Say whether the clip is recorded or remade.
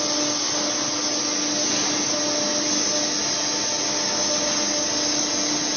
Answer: recorded